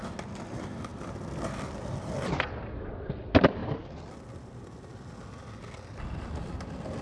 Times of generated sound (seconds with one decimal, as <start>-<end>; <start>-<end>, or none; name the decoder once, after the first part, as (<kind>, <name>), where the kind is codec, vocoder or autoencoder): none